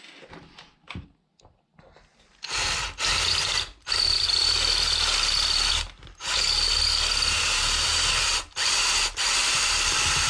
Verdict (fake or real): real